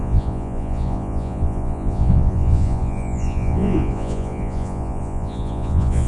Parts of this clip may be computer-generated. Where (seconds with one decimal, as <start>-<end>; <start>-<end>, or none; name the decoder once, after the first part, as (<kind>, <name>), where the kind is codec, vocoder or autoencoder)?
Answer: 0.0-6.1 (vocoder, Vocos)